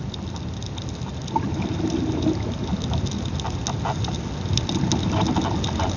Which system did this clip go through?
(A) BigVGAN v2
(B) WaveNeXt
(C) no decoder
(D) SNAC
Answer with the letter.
C